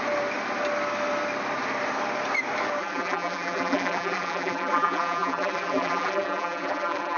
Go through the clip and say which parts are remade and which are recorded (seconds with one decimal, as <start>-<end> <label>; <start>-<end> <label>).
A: 0.0-2.8 recorded; 2.8-7.2 remade